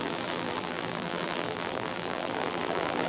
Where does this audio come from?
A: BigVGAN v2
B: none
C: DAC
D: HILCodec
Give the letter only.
A